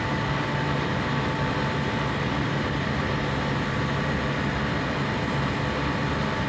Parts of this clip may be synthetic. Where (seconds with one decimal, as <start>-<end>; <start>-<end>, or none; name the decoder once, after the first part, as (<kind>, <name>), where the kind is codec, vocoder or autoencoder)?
none